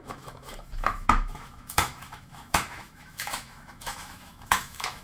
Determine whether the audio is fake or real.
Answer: fake